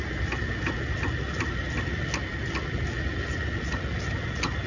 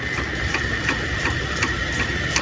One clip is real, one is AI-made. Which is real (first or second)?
first